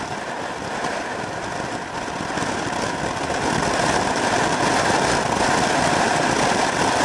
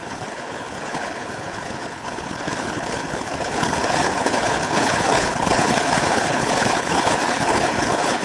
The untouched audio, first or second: first